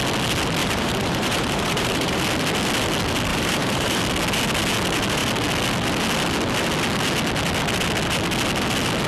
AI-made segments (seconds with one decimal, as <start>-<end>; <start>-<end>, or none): 0.6-2.2; 3.3-4.0